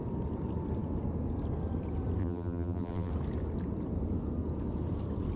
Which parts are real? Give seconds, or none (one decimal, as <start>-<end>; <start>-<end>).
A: 0.0-2.2; 3.1-5.4